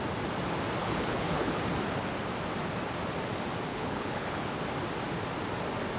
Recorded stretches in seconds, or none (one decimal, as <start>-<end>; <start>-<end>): 0.0-0.8; 1.6-3.7; 4.5-6.0